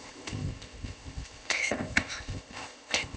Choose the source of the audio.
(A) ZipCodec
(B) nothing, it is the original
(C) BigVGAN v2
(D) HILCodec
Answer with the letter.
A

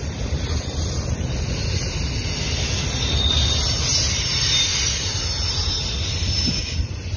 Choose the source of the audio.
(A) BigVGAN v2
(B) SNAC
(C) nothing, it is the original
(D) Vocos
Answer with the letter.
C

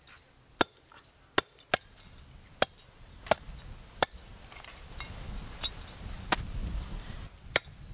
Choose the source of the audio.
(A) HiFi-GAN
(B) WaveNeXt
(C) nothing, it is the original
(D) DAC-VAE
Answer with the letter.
C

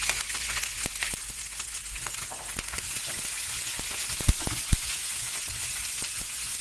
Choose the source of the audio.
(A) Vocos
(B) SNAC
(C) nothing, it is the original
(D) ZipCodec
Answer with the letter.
A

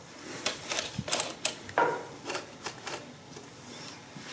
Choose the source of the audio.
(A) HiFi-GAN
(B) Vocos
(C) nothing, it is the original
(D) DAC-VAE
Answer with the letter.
C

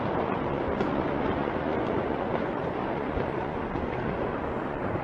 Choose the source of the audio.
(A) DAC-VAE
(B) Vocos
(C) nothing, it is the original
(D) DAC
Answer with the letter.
B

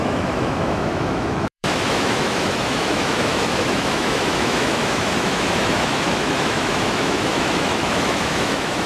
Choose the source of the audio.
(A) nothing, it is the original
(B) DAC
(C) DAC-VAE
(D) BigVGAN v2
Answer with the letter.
C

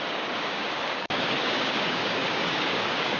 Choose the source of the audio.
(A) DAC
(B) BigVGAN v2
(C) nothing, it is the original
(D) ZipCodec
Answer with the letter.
A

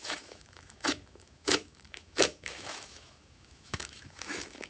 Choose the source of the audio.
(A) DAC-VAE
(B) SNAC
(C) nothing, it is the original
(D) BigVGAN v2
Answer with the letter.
A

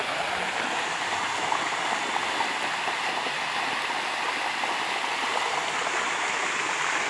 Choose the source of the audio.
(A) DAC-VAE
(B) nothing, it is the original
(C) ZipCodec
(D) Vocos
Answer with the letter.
B